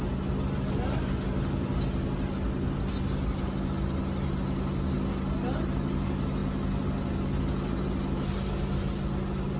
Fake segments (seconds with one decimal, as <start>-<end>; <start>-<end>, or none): none